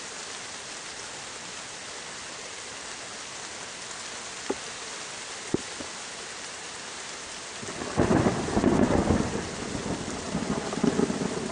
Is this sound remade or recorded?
recorded